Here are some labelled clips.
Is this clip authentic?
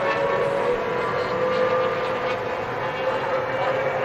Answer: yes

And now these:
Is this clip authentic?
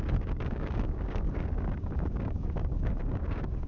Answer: no